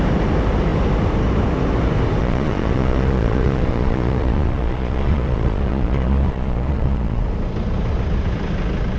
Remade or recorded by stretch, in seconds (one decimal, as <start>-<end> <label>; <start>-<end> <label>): 0.0-2.2 recorded; 2.2-7.2 remade; 7.2-9.0 recorded